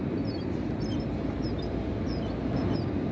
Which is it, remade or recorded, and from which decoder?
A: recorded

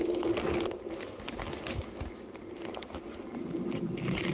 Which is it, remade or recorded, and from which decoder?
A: recorded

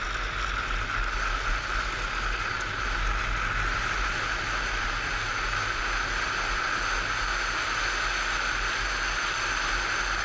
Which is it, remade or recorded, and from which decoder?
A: recorded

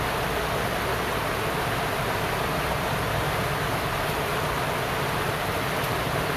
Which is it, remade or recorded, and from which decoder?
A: recorded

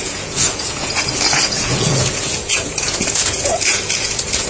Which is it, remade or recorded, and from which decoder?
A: remade, vocoder, Vocos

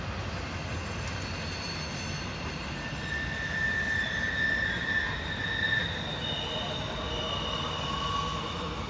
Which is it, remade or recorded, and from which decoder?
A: recorded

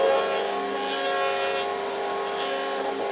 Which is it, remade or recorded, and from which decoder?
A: recorded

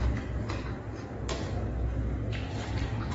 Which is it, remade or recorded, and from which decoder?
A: recorded